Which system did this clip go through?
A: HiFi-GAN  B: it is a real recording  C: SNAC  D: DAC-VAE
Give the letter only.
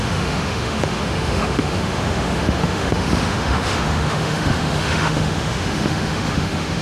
D